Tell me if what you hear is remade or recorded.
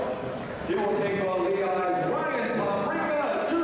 recorded